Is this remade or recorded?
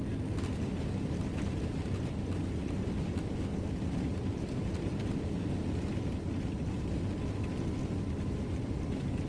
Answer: recorded